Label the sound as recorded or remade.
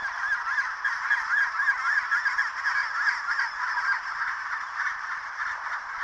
recorded